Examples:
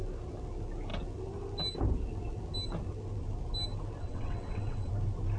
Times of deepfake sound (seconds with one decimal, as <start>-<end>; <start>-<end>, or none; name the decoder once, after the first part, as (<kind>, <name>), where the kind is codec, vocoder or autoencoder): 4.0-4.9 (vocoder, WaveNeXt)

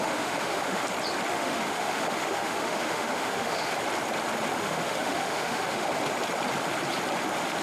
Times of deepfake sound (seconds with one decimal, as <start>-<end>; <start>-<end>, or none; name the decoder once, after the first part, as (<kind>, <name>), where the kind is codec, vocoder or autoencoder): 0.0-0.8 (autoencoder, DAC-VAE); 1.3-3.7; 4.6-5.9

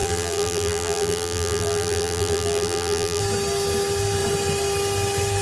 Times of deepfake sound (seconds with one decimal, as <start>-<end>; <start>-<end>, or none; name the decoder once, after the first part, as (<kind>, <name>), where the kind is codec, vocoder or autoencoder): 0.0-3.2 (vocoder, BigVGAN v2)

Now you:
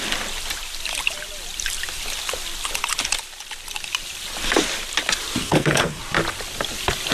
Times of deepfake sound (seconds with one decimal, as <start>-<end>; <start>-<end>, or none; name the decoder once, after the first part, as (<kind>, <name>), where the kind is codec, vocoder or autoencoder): 5.4-6.0 (codec, SNAC)

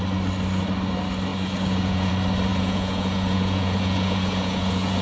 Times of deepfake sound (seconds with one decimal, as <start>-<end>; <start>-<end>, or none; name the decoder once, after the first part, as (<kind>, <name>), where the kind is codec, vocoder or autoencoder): 1.3-2.1 (vocoder, Vocos); 2.5-5.0

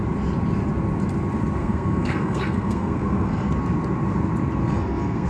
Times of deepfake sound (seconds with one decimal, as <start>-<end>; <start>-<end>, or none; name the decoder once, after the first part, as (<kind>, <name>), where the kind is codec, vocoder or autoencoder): 1.6-3.5 (codec, SNAC); 4.6-5.3